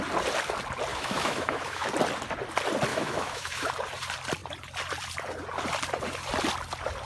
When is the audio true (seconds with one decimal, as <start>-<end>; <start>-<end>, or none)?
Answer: 0.0-0.9; 1.9-2.9; 3.7-7.1